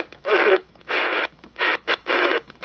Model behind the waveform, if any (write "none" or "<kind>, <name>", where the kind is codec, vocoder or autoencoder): autoencoder, DAC-VAE